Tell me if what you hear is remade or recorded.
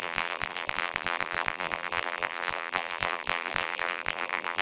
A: remade